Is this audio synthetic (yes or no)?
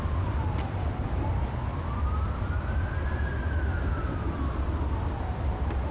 no